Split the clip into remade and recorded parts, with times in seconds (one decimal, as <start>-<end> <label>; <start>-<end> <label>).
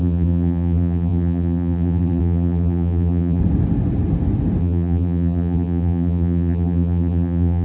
0.0-3.4 remade; 3.4-4.6 recorded; 4.6-7.6 remade